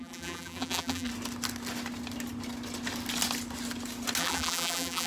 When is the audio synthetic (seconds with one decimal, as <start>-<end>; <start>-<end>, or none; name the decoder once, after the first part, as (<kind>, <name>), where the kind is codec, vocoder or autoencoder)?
0.0-1.1 (vocoder, BigVGAN v2); 4.2-5.1